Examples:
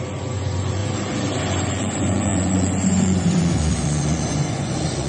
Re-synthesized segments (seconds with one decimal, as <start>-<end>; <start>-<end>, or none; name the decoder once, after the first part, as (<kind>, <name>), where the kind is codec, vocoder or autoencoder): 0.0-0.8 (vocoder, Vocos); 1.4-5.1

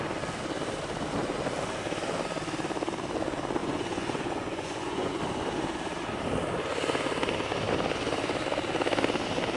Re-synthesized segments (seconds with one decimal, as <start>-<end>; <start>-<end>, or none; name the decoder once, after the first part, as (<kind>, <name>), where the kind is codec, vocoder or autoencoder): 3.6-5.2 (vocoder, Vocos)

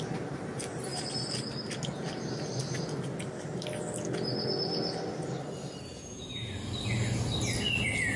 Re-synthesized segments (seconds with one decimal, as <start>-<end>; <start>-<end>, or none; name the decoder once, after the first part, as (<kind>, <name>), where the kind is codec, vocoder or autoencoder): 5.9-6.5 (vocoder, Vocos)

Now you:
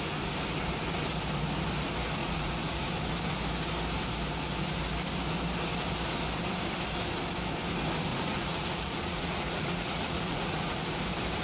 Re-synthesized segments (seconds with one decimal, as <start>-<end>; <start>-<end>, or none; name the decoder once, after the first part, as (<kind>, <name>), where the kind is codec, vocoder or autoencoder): 2.2-2.9 (vocoder, Vocos); 8.1-10.8

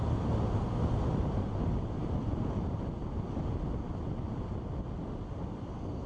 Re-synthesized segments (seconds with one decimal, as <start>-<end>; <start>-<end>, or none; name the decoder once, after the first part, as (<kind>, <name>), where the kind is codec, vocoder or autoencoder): none